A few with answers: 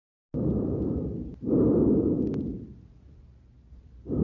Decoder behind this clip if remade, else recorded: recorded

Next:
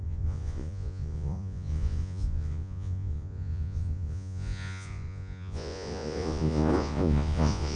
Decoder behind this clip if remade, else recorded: remade, vocoder, Vocos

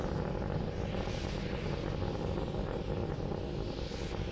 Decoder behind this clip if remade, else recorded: recorded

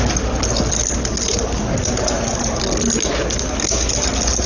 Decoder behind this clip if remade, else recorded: recorded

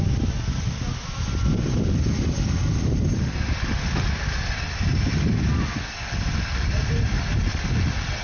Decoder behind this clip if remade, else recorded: recorded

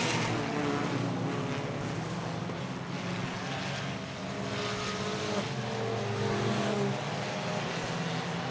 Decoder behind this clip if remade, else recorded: recorded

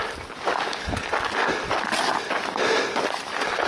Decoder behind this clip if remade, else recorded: recorded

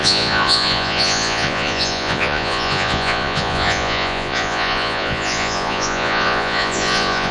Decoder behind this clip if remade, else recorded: remade, vocoder, Vocos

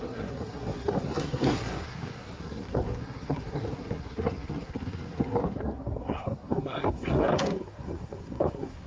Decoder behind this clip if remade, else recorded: remade, codec, SNAC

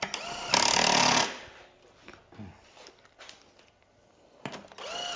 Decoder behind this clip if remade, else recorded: recorded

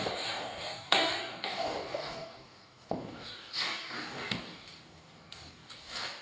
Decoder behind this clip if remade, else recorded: remade, codec, DAC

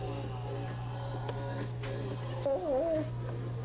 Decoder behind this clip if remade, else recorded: recorded